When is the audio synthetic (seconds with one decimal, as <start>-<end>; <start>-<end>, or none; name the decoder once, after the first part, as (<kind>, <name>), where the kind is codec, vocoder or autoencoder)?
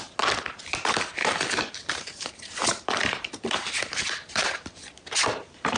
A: 1.2-4.7 (vocoder, BigVGAN v2)